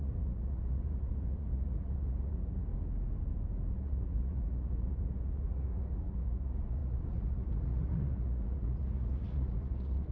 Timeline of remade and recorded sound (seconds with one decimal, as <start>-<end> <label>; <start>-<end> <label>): 0.0-2.7 remade; 2.7-3.7 recorded; 3.7-10.1 remade